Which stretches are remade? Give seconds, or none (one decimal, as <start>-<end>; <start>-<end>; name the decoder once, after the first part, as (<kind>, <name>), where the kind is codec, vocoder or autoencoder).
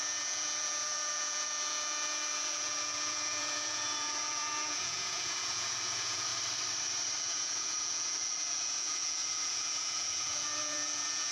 0.0-6.3 (vocoder, Vocos); 7.2-11.3